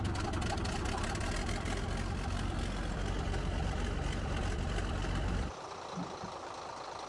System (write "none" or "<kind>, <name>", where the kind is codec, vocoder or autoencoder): none